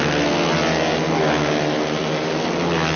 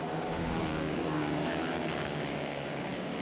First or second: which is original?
first